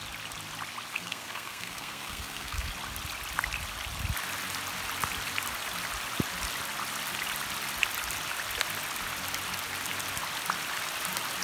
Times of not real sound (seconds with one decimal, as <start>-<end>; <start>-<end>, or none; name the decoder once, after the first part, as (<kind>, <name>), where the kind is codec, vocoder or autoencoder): 0.9-2.7 (codec, SNAC)